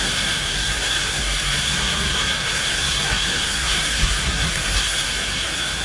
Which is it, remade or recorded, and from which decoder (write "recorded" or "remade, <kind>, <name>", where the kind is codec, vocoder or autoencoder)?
remade, codec, SNAC